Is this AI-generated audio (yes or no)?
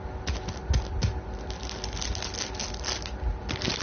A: no